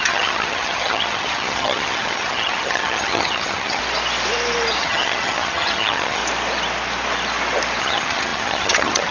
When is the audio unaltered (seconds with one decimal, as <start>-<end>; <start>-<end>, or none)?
3.8-4.8; 6.2-7.8